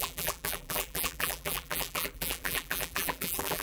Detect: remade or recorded remade